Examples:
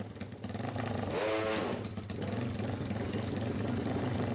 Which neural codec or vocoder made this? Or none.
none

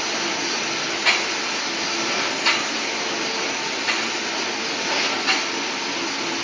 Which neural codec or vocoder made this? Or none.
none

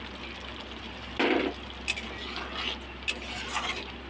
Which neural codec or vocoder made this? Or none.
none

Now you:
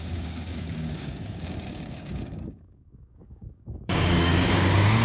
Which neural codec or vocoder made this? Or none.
codec, DAC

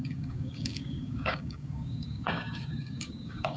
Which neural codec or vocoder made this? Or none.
codec, DAC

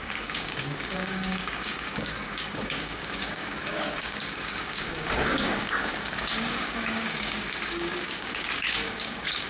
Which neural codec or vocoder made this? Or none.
codec, DAC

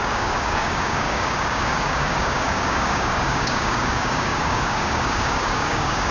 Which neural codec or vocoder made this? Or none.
codec, DAC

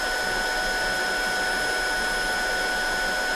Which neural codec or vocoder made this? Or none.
none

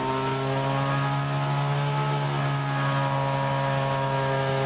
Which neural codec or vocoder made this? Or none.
none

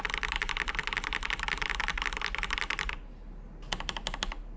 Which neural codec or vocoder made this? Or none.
none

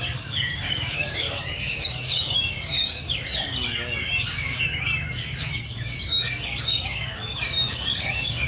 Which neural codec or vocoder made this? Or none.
codec, DAC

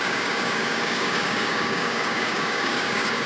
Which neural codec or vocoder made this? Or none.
codec, DAC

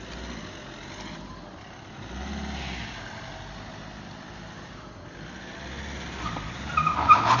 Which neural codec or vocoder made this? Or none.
none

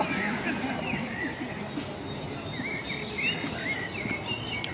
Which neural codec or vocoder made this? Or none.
none